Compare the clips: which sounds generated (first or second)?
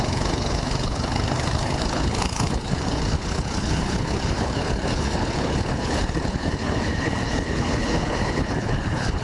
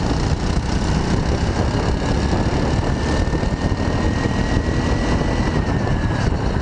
first